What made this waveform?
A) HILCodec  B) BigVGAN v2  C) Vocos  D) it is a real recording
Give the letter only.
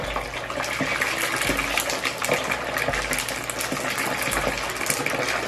D